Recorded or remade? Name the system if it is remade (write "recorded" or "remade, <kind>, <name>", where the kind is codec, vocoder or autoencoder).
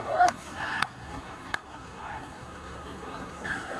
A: remade, codec, SNAC